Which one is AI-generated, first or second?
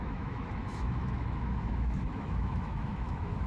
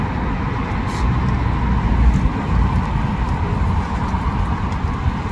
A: first